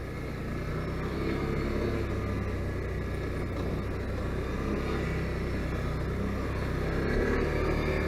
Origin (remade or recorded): recorded